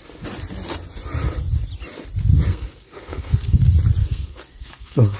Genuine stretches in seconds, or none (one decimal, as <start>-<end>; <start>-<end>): 0.0-2.5; 3.6-4.0